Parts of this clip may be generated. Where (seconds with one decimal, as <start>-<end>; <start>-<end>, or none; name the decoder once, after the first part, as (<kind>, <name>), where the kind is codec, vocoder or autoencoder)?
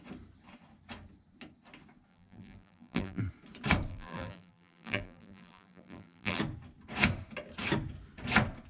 2.1-3.2 (vocoder, BigVGAN v2); 3.9-6.4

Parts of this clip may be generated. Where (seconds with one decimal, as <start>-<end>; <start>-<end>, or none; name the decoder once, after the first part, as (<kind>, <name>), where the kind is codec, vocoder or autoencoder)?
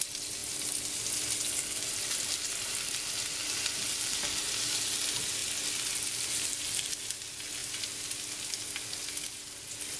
none